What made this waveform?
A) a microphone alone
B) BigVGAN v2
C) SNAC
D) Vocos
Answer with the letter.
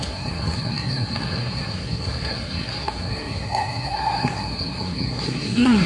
C